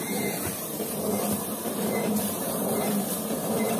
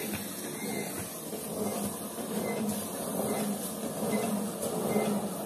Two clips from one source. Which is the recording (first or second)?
second